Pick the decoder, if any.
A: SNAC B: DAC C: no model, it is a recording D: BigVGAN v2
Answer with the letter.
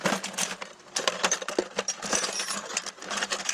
C